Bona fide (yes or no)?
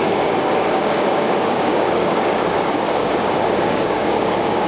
no